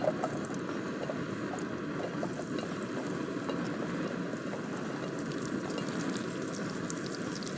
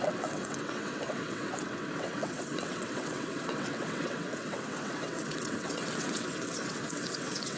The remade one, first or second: second